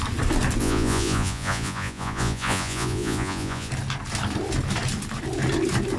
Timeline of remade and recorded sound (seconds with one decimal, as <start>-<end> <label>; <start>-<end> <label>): 0.0-0.6 recorded; 0.6-3.7 remade; 3.7-6.0 recorded